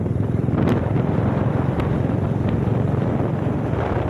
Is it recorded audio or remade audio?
remade